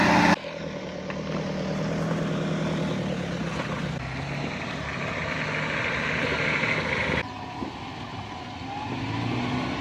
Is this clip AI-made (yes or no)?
no